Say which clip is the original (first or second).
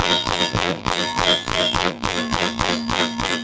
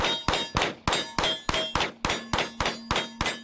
second